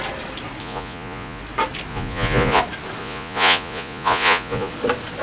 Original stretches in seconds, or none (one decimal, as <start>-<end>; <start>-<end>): 0.0-0.6; 1.4-1.9; 2.6-3.0; 4.7-5.2